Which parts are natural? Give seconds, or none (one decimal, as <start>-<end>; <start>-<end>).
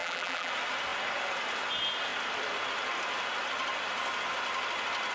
0.5-5.1